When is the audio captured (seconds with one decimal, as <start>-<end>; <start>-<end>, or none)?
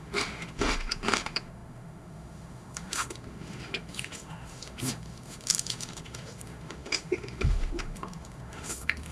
none